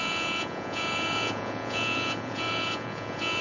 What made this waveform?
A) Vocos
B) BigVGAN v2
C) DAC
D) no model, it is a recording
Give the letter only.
A